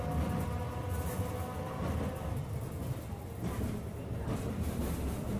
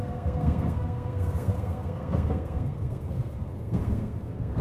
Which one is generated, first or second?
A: second